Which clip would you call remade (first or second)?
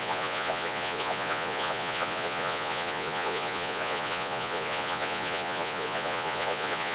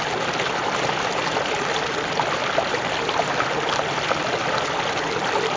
first